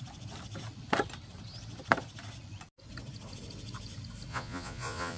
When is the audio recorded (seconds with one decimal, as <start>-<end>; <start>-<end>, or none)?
0.0-4.3